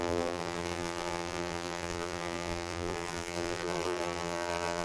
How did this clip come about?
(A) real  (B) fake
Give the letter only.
B